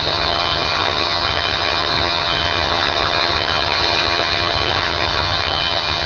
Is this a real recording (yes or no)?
no